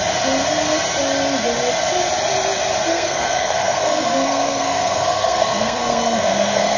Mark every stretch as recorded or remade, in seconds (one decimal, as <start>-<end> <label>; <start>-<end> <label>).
0.0-2.9 recorded; 2.9-6.8 remade